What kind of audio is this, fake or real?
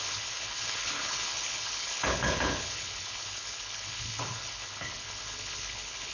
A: fake